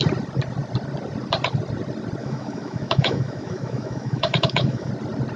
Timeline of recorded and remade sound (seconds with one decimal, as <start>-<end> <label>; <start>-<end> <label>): 0.0-2.2 recorded; 2.2-4.9 remade; 4.9-5.4 recorded